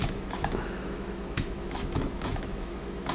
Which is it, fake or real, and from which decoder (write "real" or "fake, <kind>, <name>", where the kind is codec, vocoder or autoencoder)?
fake, autoencoder, DAC-VAE